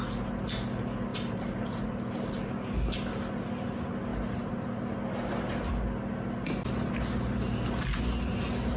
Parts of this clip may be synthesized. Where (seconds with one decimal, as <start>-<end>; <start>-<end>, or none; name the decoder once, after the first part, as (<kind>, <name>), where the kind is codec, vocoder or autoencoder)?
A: 1.1-1.9 (vocoder, BigVGAN v2)